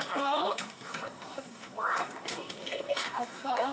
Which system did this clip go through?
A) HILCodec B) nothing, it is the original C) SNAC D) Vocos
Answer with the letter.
C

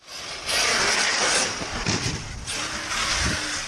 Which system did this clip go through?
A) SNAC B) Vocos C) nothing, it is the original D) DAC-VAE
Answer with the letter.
C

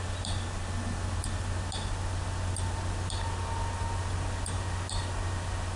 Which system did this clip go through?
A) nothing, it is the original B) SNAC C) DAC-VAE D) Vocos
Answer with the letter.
A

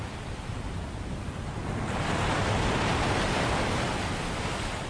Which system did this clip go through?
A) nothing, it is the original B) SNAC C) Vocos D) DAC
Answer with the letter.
A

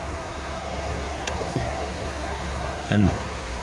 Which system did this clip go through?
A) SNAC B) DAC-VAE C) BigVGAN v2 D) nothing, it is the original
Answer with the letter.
A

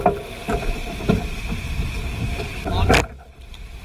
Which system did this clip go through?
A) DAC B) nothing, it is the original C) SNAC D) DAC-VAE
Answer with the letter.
B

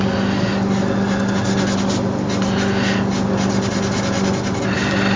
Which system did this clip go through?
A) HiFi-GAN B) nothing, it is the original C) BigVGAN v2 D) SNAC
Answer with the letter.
B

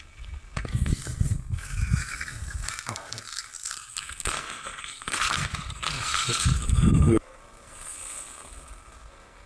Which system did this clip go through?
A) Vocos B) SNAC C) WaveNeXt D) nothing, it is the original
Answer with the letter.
B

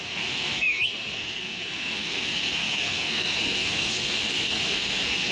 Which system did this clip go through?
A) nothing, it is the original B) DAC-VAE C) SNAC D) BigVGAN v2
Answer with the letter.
C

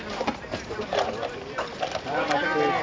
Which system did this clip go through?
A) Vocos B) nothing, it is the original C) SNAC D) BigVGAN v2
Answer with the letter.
B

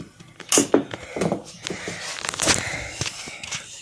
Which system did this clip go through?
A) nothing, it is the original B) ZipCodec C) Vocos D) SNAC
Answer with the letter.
A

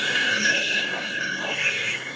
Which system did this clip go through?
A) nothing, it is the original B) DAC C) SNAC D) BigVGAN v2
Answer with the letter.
C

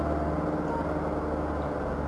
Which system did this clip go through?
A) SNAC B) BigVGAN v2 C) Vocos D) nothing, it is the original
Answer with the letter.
D